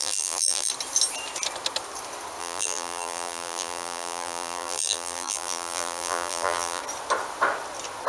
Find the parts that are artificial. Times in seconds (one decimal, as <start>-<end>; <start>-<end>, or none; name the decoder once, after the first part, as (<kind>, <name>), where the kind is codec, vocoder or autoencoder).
0.0-0.7 (vocoder, BigVGAN v2); 2.4-6.8